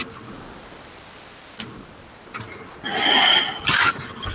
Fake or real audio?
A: real